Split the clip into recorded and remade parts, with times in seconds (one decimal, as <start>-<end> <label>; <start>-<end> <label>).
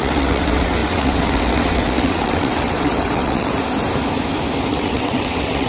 0.0-3.5 remade; 3.5-4.7 recorded; 4.7-5.7 remade